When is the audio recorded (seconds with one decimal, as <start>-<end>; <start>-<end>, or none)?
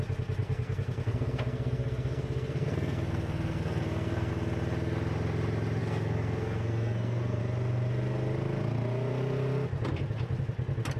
0.0-0.4; 4.3-5.8; 7.4-11.0